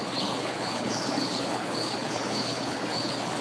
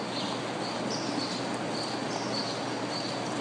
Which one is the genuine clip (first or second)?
second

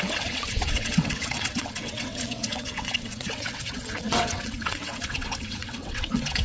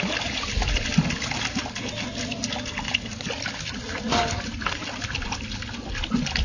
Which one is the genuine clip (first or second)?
second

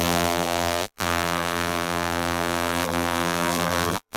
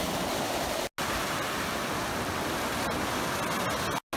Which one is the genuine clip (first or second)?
second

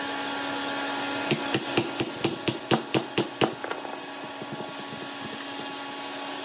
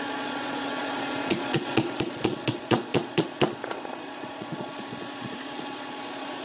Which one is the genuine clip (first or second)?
first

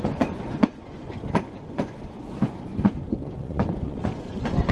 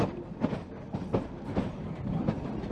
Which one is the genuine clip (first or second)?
second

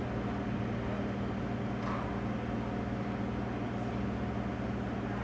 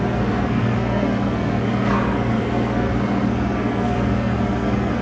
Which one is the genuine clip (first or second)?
first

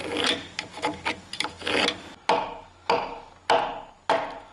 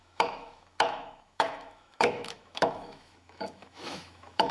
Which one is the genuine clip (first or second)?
first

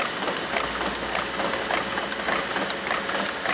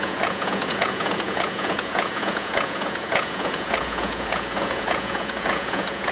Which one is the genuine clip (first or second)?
first